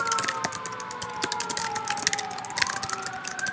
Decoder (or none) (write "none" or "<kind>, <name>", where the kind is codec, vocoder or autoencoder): none